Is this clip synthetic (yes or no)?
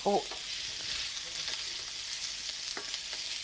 no